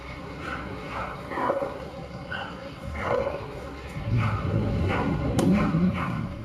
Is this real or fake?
fake